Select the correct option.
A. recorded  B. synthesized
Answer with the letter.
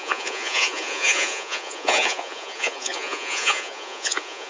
B